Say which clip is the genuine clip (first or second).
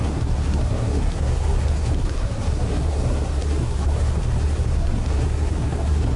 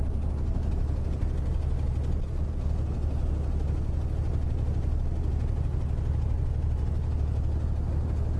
second